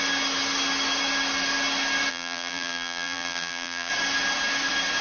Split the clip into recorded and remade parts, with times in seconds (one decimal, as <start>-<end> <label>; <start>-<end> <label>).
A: 0.0-2.1 recorded; 2.1-3.9 remade; 3.9-5.0 recorded